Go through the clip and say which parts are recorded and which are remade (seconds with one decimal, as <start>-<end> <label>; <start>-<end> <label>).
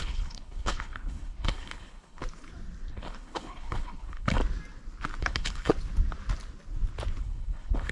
0.0-2.2 remade; 2.2-2.9 recorded; 2.9-4.4 remade; 4.4-5.2 recorded; 5.2-5.7 remade; 5.7-7.2 recorded; 7.2-7.9 remade